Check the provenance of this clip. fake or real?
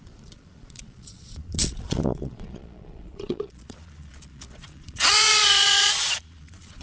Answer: fake